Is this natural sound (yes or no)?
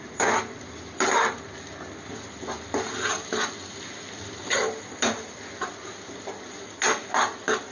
yes